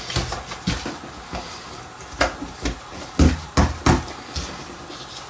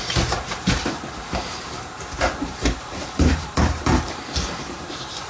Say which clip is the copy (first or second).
second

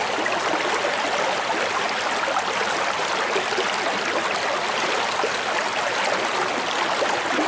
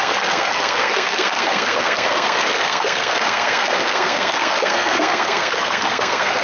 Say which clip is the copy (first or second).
second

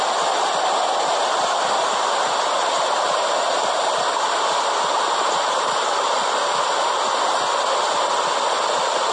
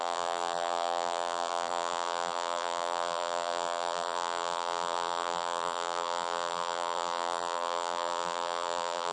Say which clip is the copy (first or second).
second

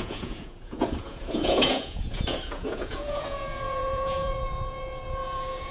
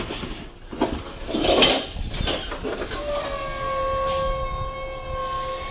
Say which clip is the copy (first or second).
first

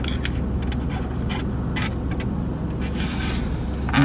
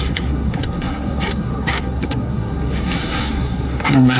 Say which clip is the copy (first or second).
second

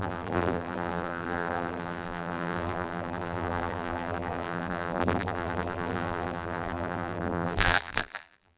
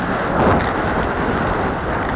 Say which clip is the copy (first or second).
first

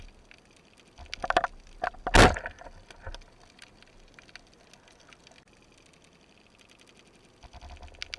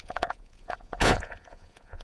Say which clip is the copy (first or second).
second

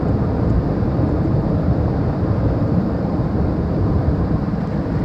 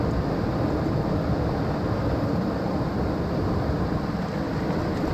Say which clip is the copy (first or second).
first